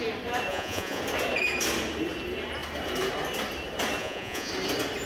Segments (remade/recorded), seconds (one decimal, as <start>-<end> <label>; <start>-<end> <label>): 0.0-0.5 recorded; 0.5-1.0 remade; 1.0-4.0 recorded; 4.0-4.5 remade; 4.5-5.1 recorded

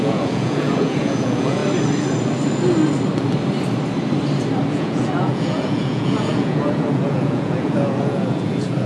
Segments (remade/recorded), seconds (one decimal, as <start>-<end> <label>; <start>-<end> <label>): 0.0-1.6 remade; 1.6-4.7 recorded; 4.7-8.9 remade

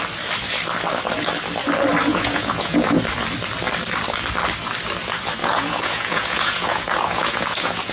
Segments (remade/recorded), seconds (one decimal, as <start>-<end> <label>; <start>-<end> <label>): 0.0-2.1 recorded; 2.1-3.0 remade; 3.0-5.4 recorded; 5.4-7.9 remade

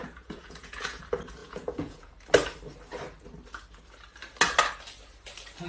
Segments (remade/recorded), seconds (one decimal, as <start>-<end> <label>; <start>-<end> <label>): 0.0-1.0 remade; 1.0-1.4 recorded; 1.4-2.1 remade; 2.1-5.7 recorded

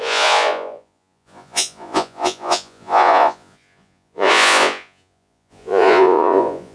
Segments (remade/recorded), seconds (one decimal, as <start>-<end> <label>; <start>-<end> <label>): 0.0-6.7 remade

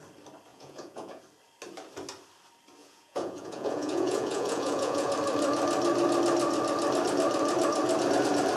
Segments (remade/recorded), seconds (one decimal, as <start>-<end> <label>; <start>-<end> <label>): 0.0-0.5 recorded; 0.5-1.2 remade; 1.2-2.8 recorded; 2.8-5.1 remade; 5.1-8.6 recorded